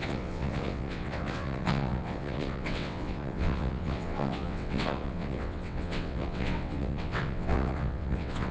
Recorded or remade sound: remade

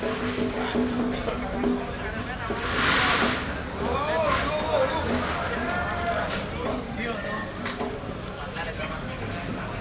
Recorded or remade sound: recorded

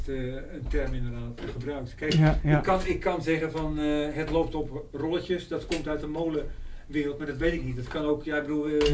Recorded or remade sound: recorded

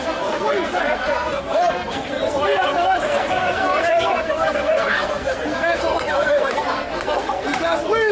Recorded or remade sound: remade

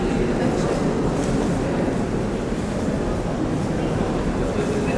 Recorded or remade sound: recorded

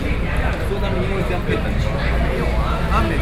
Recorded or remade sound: recorded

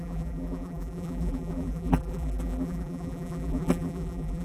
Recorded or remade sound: remade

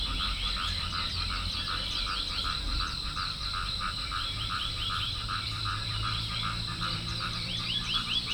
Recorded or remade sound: remade